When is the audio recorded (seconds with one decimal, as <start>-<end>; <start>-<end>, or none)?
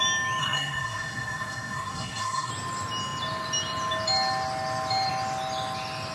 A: 0.0-0.4; 2.5-6.1